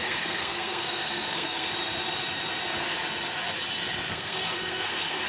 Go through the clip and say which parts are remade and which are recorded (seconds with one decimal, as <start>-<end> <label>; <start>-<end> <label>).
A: 0.0-1.7 remade; 1.7-4.1 recorded; 4.1-5.3 remade